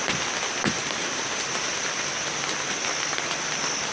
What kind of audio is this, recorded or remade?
recorded